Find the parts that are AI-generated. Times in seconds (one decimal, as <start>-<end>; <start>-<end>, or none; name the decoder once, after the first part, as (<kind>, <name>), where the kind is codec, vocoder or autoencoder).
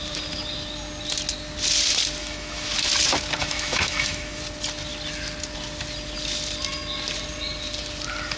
2.2-2.7 (autoencoder, DAC-VAE); 3.4-4.4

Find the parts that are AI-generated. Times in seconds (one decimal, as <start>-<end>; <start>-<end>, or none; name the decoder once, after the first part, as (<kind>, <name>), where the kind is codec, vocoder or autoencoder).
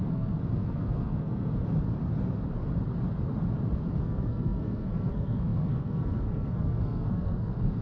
0.0-1.5 (codec, SNAC); 4.0-7.8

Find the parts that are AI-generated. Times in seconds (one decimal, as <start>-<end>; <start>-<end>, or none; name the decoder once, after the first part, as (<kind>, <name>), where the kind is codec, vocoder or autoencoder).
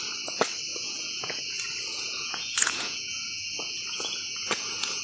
0.7-1.4 (vocoder, Vocos); 1.9-5.0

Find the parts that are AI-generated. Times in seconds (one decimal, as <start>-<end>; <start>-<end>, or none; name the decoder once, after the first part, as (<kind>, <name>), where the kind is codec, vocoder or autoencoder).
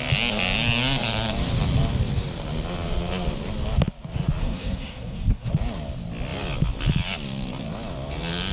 4.4-5.5 (codec, SNAC)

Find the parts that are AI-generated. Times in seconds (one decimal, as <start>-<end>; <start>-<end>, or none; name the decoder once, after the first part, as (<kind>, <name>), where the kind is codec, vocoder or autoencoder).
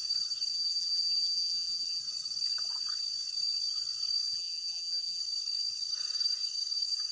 0.5-2.0 (vocoder, BigVGAN v2); 4.3-5.2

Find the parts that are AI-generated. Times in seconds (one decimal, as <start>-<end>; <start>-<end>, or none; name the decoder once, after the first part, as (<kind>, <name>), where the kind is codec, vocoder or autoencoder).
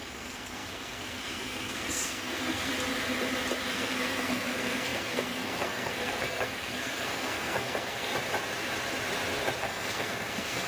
0.0-2.7 (codec, SNAC); 3.7-8.1; 9.6-10.7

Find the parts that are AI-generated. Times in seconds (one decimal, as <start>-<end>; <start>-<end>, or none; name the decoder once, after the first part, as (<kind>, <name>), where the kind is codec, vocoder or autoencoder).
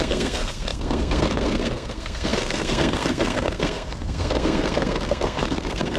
0.0-6.0 (codec, SNAC)